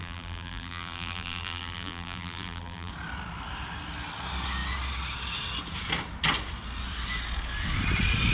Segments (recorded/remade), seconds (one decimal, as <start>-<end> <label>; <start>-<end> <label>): 0.0-2.9 remade; 2.9-8.3 recorded